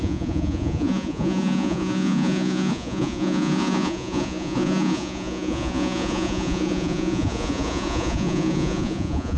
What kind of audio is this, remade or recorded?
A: remade